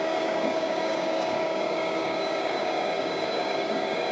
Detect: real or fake fake